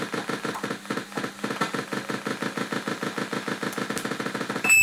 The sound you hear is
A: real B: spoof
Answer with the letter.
A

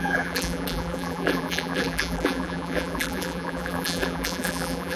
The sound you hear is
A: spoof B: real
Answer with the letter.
A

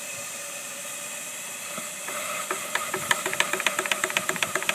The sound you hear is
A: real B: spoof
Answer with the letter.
B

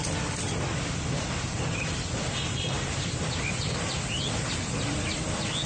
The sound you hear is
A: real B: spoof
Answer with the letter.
B